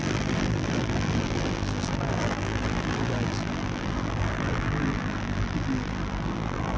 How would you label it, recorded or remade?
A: remade